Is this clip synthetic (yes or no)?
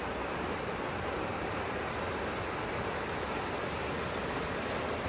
no